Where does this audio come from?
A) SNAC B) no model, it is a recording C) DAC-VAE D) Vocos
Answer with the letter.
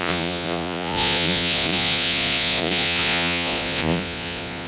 D